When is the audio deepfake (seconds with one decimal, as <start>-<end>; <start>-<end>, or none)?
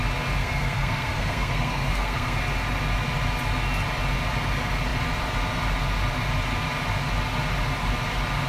0.4-2.4